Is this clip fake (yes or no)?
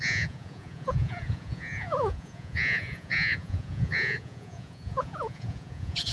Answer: yes